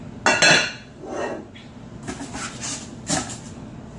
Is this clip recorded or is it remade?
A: recorded